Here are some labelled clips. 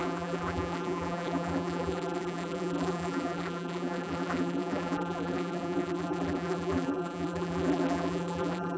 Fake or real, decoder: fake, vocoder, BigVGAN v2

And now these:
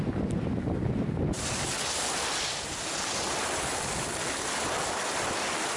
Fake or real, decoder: real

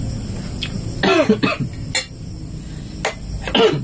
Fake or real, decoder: real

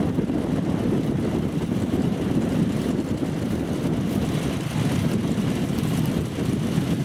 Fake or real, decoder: real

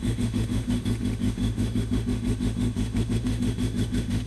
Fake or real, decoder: fake, autoencoder, DAC-VAE